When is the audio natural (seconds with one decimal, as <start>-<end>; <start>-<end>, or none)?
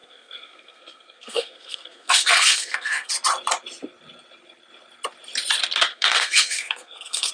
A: 3.1-5.9